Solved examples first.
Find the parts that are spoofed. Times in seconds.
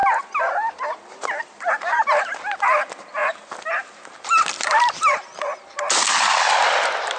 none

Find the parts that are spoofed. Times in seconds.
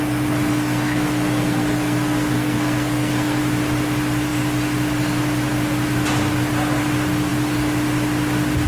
0.5-3.4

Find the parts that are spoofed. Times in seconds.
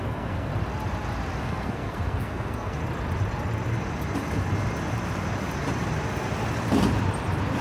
0.0-0.5; 1.4-2.8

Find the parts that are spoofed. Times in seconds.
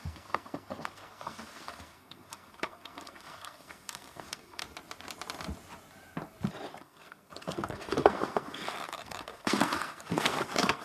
0.0-4.6; 6.8-10.8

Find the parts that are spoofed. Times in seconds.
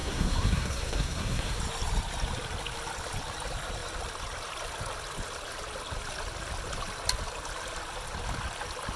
0.0-1.6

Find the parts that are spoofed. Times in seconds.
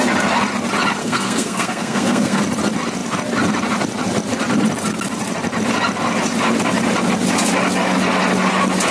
1.0-2.4